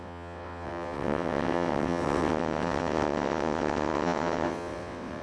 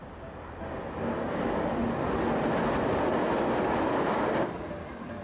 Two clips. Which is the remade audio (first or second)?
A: first